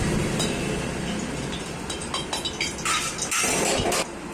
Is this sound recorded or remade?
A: recorded